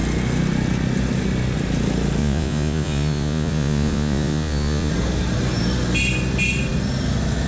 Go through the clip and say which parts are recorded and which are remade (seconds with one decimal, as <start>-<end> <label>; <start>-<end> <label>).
0.0-2.2 recorded; 2.2-4.9 remade; 4.9-7.5 recorded